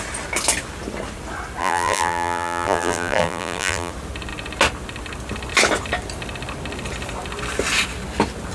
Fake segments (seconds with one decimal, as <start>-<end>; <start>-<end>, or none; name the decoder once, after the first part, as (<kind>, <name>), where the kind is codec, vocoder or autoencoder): 1.6-3.9 (vocoder, BigVGAN v2)